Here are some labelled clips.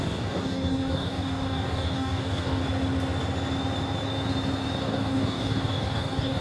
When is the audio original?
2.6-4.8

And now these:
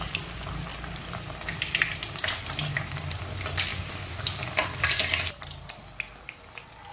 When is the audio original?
0.0-6.9